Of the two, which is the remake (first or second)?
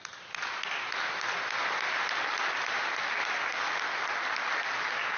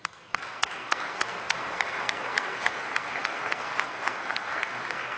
second